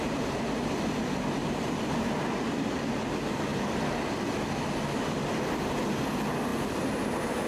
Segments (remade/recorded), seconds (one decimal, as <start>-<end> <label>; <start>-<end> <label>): 0.0-7.5 recorded